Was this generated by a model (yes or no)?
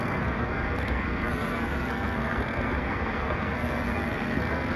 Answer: yes